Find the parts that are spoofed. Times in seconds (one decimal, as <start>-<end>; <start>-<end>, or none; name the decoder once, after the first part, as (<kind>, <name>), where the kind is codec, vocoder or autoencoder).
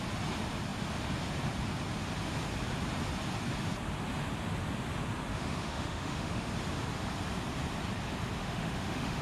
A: 5.3-6.5 (autoencoder, DAC-VAE); 8.4-9.2